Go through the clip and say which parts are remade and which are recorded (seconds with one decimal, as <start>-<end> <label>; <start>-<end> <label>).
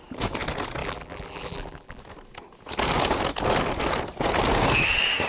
0.0-0.8 recorded; 0.8-2.0 remade; 2.0-5.3 recorded